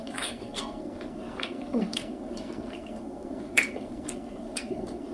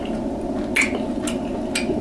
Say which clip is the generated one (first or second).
first